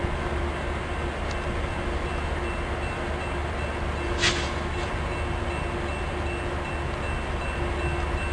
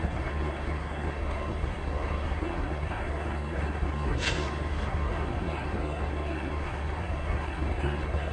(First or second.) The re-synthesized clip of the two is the second